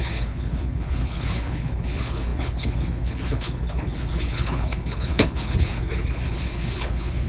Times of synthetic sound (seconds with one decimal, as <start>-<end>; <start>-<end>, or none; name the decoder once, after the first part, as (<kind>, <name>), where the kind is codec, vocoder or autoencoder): 0.0-7.3 (codec, HILCodec)